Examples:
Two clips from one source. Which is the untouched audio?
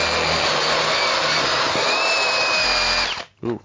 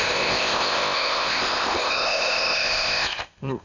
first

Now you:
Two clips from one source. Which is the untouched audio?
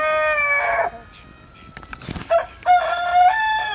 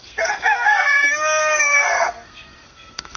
first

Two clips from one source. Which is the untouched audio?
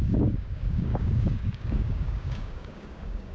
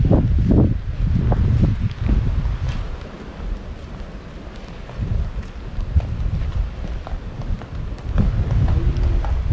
second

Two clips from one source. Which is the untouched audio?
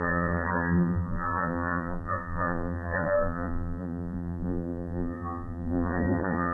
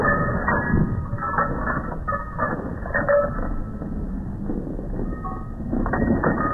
second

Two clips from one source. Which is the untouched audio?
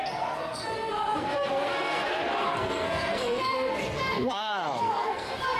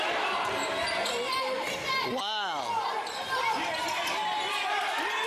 second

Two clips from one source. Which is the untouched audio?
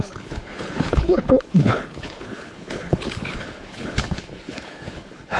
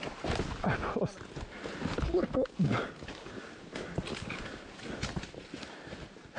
second